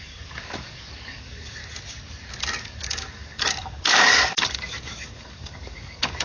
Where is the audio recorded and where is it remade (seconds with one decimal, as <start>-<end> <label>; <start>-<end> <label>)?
0.0-1.6 remade; 1.6-2.6 recorded; 2.6-6.2 remade